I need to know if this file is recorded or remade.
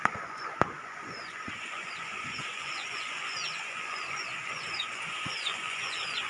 remade